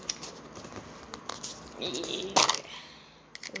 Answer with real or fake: real